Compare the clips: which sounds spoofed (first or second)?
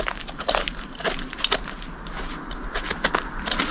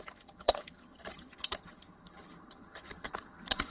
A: second